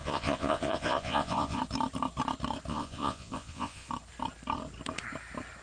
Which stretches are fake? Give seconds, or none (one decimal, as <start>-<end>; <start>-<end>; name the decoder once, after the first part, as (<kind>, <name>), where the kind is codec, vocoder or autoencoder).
0.0-1.6 (vocoder, Vocos); 2.7-3.9